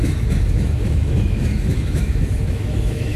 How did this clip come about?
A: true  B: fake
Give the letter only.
B